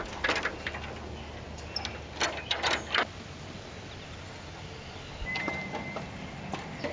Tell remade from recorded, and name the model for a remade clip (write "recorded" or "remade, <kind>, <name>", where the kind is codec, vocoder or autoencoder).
recorded